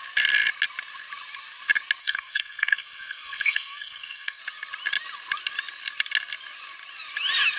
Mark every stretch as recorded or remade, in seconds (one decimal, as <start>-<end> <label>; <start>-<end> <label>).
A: 0.0-2.0 recorded; 2.0-4.4 remade; 4.4-7.6 recorded